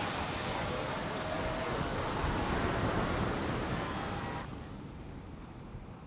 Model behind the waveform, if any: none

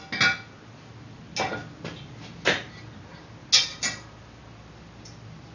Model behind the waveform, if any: none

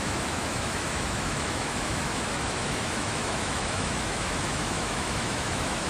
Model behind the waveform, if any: autoencoder, DAC-VAE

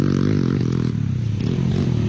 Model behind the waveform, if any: none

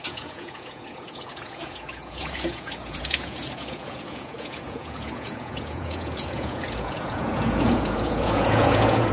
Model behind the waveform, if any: vocoder, Vocos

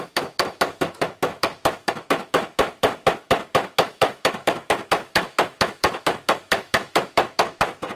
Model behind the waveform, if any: autoencoder, DAC-VAE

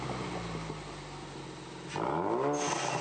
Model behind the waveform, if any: none